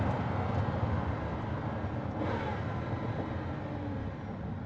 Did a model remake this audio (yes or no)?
no